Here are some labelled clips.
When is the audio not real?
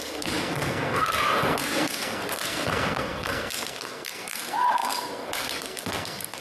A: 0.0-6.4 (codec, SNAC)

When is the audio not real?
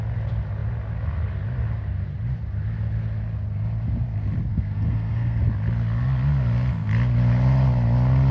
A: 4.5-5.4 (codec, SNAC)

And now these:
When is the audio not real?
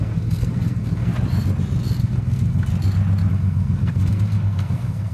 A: 0.0-1.1 (codec, SNAC); 2.0-2.7; 3.3-5.1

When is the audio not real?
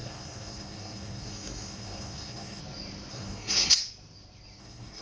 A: 0.0-2.6 (codec, SNAC); 3.1-3.8; 4.6-5.0